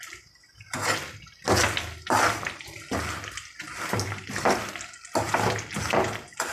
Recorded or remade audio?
recorded